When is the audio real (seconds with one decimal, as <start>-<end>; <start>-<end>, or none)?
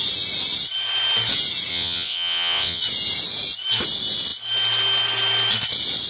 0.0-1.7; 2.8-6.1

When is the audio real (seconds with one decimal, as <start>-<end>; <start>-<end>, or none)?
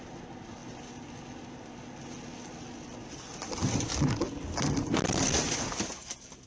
0.0-6.5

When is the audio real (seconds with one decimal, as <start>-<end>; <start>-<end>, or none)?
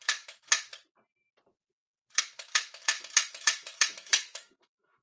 0.7-2.2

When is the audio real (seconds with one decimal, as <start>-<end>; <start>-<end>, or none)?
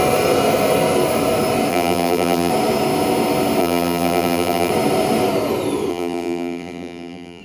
0.0-1.7; 2.5-3.6; 4.7-5.9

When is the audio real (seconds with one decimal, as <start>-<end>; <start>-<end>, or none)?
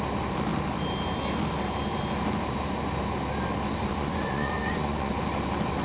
0.0-3.9; 5.1-5.8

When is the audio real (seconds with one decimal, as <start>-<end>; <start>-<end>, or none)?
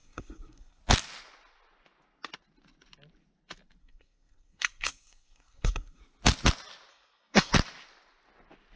0.8-3.8; 6.0-6.9; 7.5-8.8